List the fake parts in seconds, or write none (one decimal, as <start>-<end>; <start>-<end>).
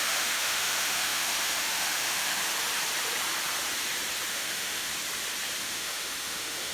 0.0-2.4; 4.3-4.9; 5.6-6.7